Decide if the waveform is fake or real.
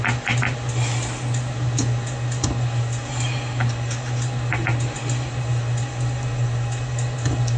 real